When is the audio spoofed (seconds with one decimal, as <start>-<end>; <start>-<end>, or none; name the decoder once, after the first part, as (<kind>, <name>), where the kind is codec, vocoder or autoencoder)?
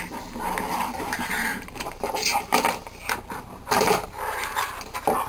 0.0-2.3 (vocoder, BigVGAN v2); 3.1-5.3